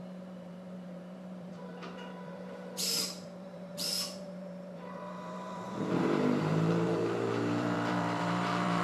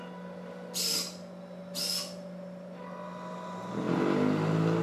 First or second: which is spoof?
first